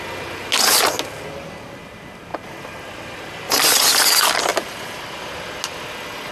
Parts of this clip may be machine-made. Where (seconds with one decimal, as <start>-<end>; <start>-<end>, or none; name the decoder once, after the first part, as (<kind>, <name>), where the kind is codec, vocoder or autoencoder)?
2.3-4.0 (vocoder, BigVGAN v2); 4.5-5.0

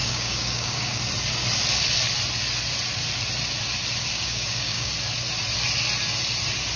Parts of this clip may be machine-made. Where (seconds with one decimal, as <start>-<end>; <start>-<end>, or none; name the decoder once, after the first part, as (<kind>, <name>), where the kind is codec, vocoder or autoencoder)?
0.0-1.0 (codec, DAC); 4.1-4.9